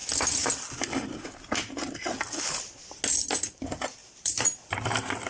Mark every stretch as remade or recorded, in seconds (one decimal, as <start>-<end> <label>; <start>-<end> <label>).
0.0-4.0 recorded; 4.0-4.8 remade; 4.8-5.3 recorded